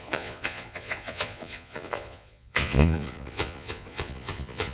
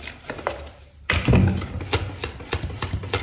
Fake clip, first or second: first